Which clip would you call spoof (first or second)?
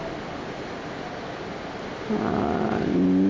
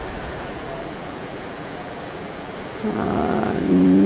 second